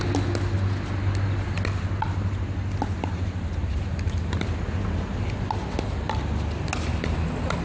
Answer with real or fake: real